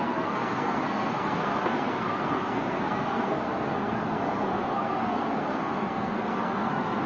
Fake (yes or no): yes